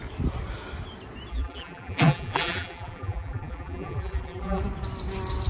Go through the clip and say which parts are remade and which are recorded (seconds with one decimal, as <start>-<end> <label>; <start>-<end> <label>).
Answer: 0.0-1.3 recorded; 1.3-4.6 remade; 4.6-5.5 recorded